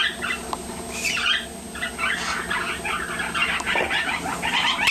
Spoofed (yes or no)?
no